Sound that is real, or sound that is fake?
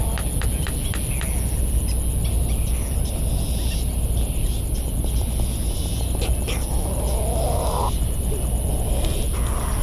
real